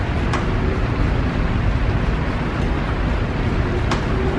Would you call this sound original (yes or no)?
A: yes